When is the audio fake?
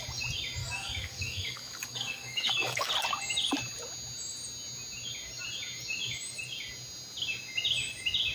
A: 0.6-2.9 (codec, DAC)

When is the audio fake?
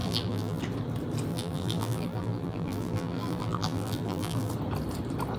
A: 0.0-0.6 (vocoder, BigVGAN v2); 1.3-4.5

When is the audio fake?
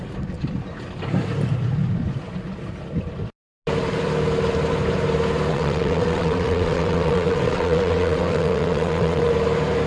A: 5.5-9.3 (vocoder, WaveNeXt)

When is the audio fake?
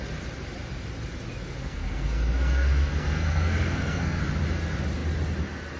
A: 1.6-4.2 (codec, SNAC)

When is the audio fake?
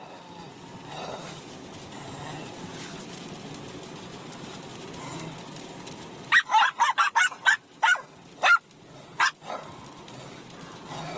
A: 4.1-4.6 (vocoder, BigVGAN v2)